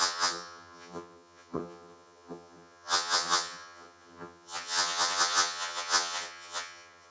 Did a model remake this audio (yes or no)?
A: yes